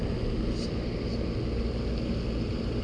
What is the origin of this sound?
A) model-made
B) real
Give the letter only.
B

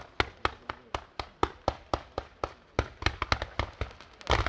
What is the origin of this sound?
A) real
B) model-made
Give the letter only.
A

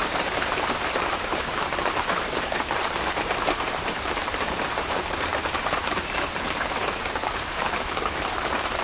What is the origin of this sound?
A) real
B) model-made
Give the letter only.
B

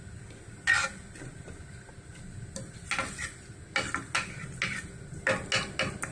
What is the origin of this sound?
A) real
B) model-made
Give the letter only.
A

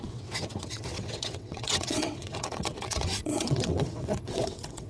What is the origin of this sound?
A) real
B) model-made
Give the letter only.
B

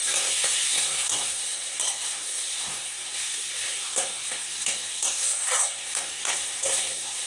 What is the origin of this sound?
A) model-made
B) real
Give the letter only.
A